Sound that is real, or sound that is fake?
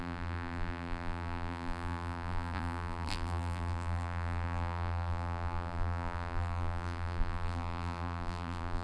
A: fake